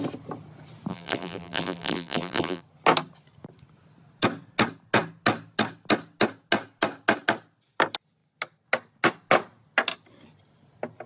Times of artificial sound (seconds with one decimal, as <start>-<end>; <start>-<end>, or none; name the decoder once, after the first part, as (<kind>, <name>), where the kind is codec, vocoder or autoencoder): 0.9-2.6 (vocoder, BigVGAN v2)